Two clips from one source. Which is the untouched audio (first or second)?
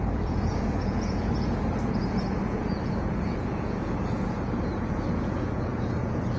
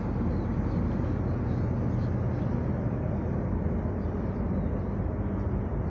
second